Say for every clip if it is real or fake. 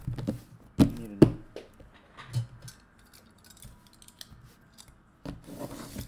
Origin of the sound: real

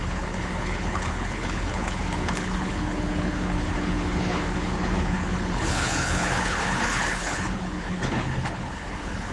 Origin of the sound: fake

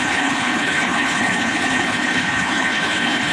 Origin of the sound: fake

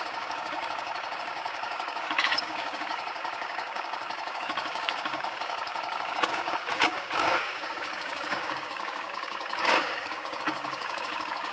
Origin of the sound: fake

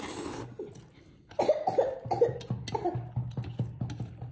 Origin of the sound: real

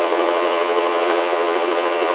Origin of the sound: fake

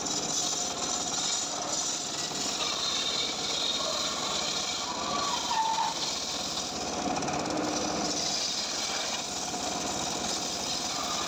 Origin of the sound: real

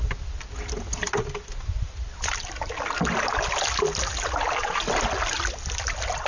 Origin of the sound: real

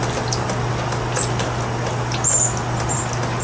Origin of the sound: real